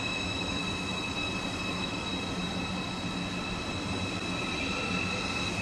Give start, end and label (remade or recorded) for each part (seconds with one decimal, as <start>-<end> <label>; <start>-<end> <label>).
0.0-0.6 remade; 0.6-1.7 recorded; 1.7-2.1 remade; 2.1-5.6 recorded